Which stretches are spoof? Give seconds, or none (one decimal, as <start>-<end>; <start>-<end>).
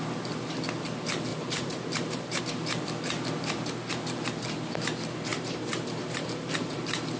1.3-2.4; 5.3-6.8